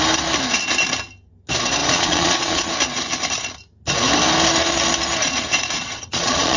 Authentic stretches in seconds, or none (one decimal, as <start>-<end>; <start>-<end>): 0.0-1.8; 2.7-5.2